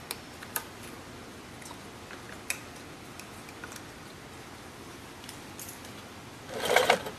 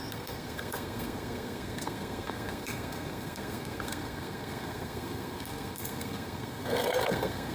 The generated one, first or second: second